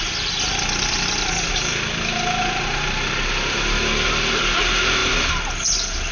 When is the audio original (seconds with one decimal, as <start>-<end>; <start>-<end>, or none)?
0.0-6.1